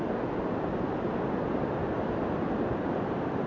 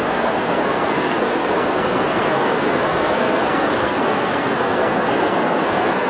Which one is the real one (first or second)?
first